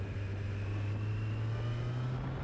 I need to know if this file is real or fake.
real